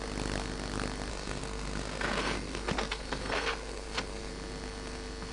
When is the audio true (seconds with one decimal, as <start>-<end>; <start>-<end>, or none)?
0.0-1.1; 4.3-5.3